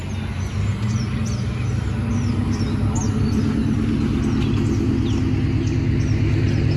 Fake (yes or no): no